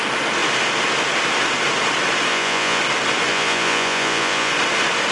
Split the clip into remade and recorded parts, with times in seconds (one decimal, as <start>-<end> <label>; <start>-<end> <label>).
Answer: 0.0-2.3 recorded; 2.3-2.8 remade; 2.8-3.3 recorded; 3.3-4.5 remade; 4.5-5.1 recorded